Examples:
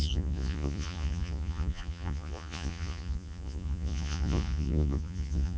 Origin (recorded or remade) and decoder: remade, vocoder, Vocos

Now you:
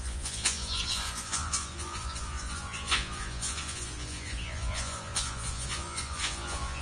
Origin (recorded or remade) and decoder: remade, vocoder, Vocos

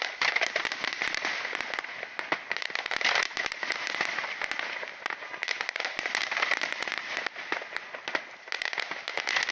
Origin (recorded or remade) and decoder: recorded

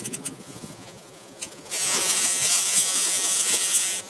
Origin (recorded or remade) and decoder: remade, vocoder, Vocos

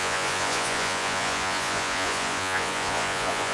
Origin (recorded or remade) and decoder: remade, vocoder, Vocos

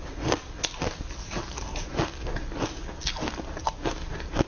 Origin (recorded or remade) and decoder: recorded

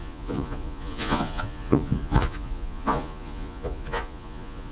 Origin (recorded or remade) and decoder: remade, vocoder, Vocos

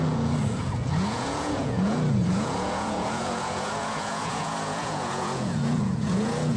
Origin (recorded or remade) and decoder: remade, vocoder, Vocos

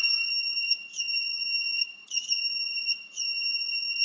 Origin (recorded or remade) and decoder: remade, vocoder, Vocos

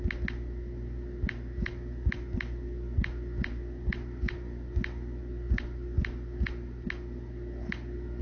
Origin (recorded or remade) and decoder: recorded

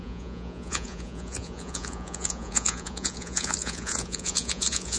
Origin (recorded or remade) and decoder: remade, vocoder, Vocos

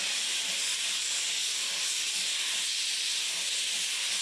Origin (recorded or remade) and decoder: recorded